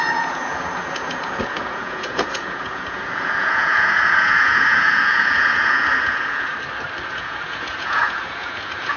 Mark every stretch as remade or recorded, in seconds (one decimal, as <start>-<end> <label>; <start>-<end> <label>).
0.0-6.5 remade; 6.5-7.1 recorded; 7.1-9.0 remade